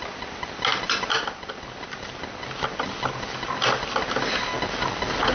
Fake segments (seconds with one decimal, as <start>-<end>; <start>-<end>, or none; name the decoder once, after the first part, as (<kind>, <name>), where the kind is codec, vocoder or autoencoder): none